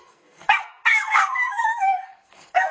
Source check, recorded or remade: remade